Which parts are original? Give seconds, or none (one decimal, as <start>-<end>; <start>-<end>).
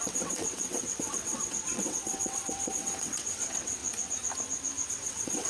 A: 3.8-4.9